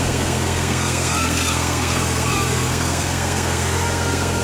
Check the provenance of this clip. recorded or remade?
remade